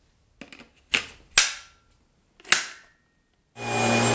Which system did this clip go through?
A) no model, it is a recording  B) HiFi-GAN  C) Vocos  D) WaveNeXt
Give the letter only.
A